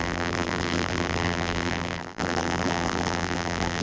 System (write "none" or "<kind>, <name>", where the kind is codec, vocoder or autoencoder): vocoder, BigVGAN v2